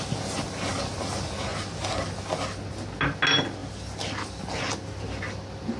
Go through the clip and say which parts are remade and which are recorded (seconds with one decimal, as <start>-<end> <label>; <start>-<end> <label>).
0.0-5.8 recorded